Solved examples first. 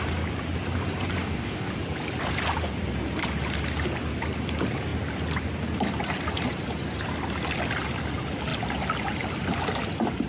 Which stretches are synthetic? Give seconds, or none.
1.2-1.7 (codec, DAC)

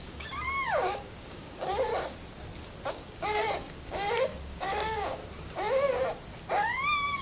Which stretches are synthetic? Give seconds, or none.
0.0-1.9 (codec, DAC); 2.9-5.2; 6.5-7.2

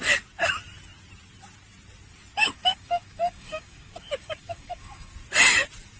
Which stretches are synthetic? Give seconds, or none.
2.4-5.1 (codec, DAC)

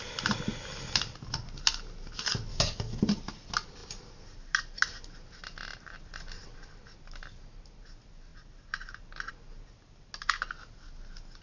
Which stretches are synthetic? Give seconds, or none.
2.5-3.0 (codec, DAC)

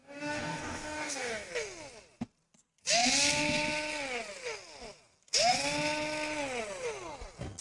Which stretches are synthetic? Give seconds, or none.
0.0-1.5 (codec, DAC)